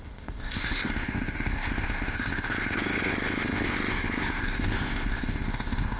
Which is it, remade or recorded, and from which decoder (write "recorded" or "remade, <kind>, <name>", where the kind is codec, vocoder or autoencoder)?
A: remade, codec, ZipCodec